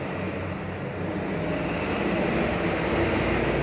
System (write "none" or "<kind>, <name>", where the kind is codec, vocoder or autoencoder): none